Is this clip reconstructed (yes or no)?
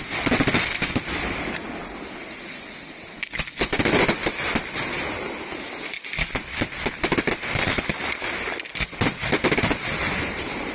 no